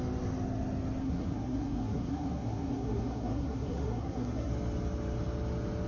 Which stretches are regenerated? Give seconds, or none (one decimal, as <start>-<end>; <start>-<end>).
1.0-4.5